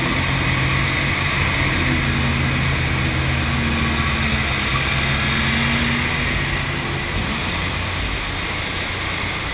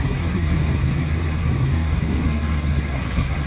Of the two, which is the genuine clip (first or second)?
first